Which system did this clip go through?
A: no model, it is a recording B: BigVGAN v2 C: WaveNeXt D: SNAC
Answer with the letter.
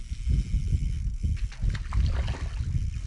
A